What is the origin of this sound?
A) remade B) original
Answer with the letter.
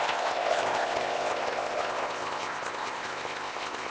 A